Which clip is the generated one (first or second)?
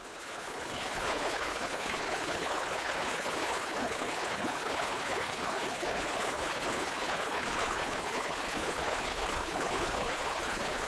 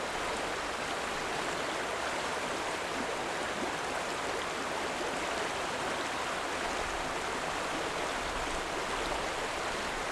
first